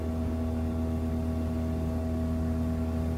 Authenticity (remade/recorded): recorded